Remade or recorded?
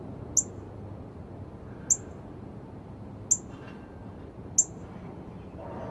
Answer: recorded